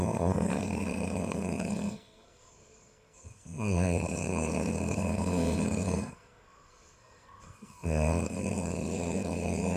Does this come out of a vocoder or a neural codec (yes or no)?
yes